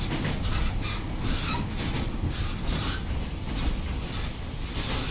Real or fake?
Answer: real